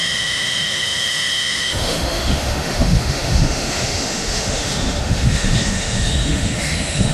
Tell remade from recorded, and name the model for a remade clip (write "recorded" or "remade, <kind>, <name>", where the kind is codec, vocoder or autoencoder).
remade, autoencoder, DAC-VAE